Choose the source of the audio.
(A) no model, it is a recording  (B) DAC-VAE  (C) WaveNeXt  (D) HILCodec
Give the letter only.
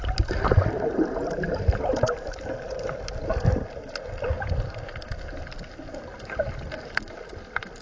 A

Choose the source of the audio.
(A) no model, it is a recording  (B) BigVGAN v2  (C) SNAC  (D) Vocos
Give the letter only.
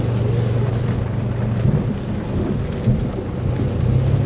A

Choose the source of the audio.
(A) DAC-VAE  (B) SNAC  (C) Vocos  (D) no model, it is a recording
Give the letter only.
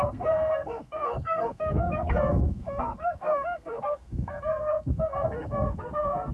B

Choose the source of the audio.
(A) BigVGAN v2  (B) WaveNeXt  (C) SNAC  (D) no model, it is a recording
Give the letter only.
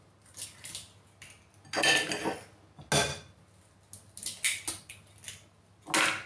D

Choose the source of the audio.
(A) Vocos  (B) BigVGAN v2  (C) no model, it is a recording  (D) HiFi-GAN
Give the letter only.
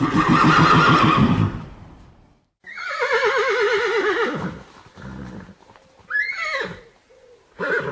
C